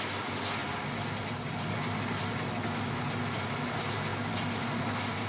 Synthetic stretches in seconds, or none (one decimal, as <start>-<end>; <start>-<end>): none